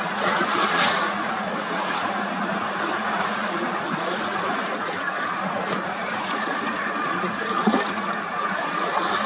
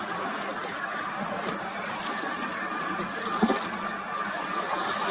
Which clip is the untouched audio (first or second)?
second